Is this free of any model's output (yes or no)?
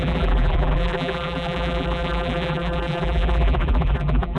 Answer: no